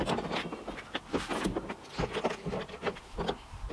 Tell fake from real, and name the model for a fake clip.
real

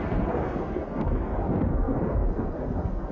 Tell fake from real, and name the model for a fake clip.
fake, codec, SNAC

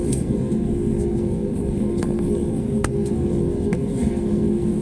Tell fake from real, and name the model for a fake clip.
fake, codec, SNAC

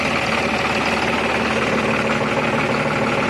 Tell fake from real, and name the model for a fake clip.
real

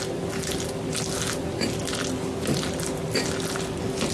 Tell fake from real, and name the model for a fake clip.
real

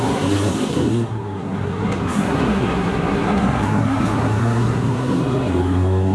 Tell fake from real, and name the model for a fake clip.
fake, codec, SNAC